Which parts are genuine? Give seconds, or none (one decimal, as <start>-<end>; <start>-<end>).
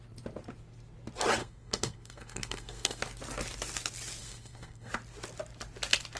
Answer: 0.0-1.4; 3.0-4.2; 4.9-6.2